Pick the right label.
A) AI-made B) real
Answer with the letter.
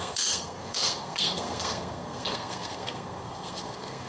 A